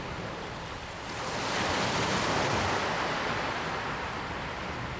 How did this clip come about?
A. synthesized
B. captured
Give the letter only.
B